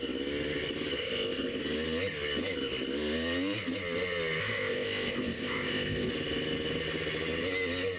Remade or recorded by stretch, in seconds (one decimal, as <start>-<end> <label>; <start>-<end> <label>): 0.0-1.0 recorded; 1.0-1.6 remade; 1.6-4.4 recorded; 4.4-6.1 remade; 6.1-8.0 recorded